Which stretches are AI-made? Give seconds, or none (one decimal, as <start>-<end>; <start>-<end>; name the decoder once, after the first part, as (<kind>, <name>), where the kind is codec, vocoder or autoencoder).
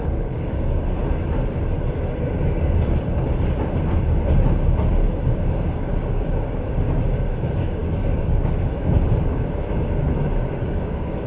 0.0-1.0 (codec, DAC); 4.9-11.3